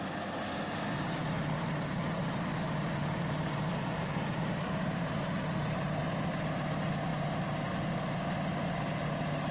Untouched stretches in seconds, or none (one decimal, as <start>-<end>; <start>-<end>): 0.0-1.9; 2.5-3.0; 6.0-9.5